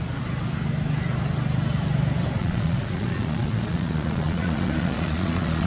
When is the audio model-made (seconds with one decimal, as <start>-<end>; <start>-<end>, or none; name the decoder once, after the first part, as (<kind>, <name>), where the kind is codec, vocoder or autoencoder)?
2.4-5.7 (vocoder, Vocos)